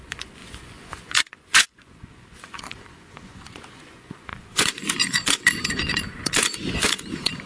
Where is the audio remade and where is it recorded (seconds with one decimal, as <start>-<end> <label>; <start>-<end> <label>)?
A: 0.0-7.5 remade